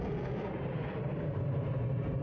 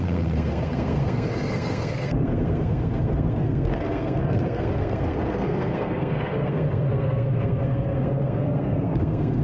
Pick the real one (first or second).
first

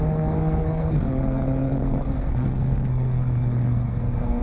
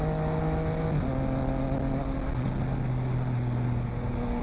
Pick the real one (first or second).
second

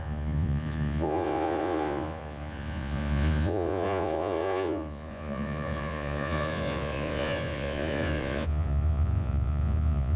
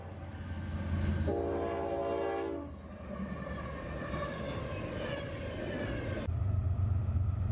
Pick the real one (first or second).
second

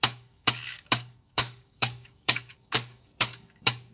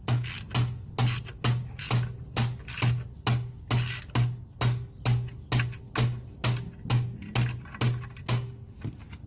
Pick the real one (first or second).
second